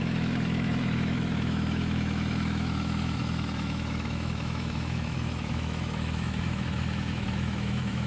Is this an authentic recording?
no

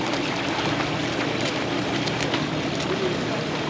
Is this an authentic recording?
yes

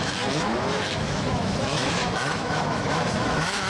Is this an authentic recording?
no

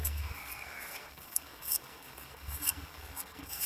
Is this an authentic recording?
no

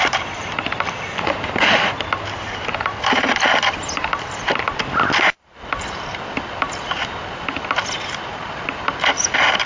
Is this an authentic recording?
no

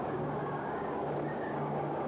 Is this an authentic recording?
no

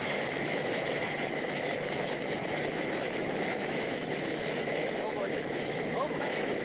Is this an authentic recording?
no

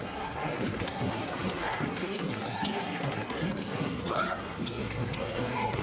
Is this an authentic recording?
no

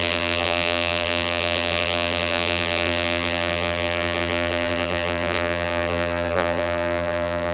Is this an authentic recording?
no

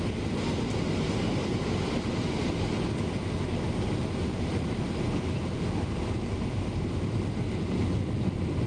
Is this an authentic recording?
yes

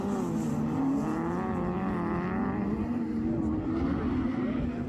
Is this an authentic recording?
yes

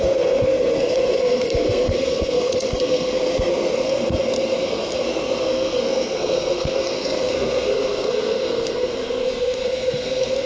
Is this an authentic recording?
no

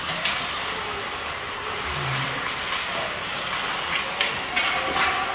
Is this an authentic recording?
yes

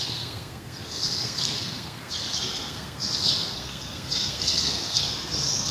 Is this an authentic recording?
no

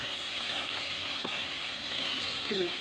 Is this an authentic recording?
no